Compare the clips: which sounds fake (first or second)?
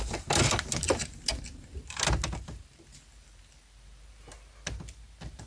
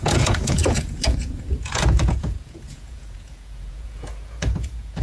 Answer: second